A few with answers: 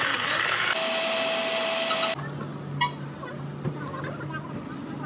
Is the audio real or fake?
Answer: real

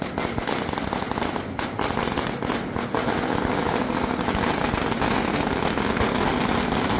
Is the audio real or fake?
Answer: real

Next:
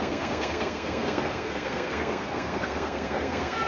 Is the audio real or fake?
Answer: fake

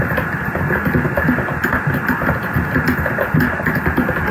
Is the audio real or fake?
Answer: real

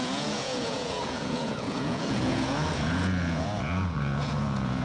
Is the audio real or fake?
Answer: fake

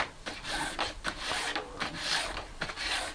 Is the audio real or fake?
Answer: real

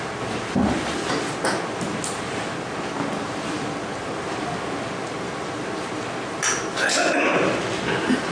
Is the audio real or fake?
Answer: real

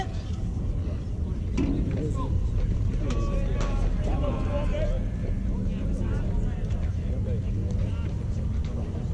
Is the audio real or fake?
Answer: real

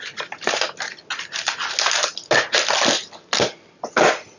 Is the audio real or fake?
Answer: real